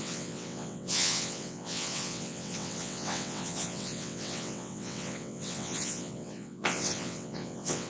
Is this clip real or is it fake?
fake